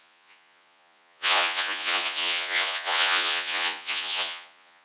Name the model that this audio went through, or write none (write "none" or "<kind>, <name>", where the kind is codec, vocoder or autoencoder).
vocoder, Vocos